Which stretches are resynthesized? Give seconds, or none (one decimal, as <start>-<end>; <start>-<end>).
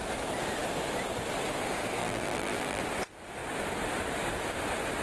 2.0-2.8